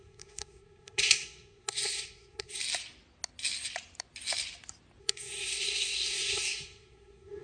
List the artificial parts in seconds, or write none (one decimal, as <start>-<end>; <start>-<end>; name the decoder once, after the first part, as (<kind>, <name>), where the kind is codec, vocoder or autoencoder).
0.0-2.6 (codec, SNAC); 5.0-7.4